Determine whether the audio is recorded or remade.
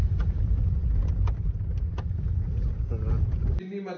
recorded